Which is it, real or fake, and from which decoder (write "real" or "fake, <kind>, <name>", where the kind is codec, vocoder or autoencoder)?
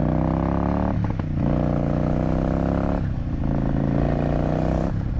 real